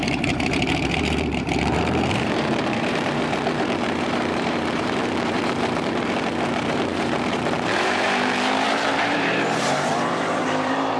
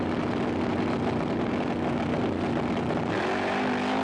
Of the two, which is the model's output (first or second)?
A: first